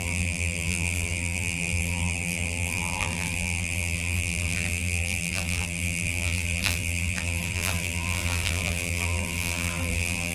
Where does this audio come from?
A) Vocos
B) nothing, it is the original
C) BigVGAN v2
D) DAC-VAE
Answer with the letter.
C